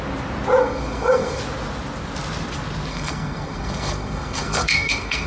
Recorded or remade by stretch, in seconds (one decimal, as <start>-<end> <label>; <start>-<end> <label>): 0.0-0.6 recorded; 0.6-1.4 remade; 1.4-2.9 recorded; 2.9-5.3 remade